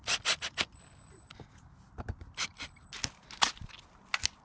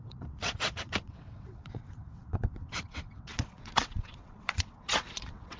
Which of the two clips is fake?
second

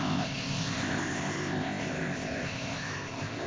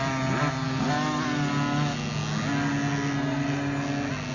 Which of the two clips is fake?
first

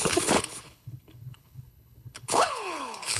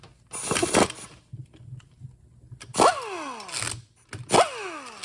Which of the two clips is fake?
first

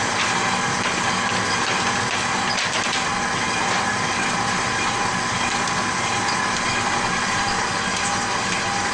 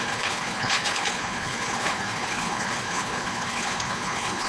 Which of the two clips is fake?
second